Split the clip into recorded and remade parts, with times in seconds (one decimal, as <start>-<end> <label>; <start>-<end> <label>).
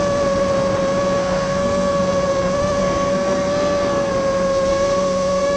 0.0-1.2 recorded; 1.2-2.0 remade; 2.0-2.8 recorded; 2.8-4.1 remade; 4.1-4.7 recorded; 4.7-5.6 remade